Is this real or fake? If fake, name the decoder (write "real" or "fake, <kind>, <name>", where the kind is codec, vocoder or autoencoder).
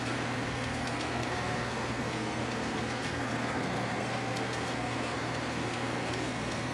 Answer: fake, codec, SNAC